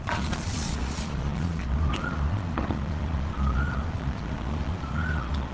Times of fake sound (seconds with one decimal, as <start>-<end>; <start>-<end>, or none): 0.0-5.5